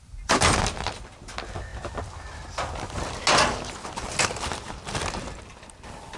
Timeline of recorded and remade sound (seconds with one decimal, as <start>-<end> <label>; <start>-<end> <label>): 0.0-6.2 recorded